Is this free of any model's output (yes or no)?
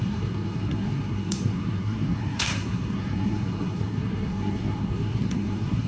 no